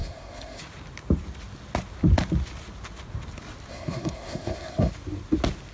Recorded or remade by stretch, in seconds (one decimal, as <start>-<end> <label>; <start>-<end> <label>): 0.0-0.6 remade; 0.6-3.7 recorded; 3.7-4.9 remade; 4.9-5.7 recorded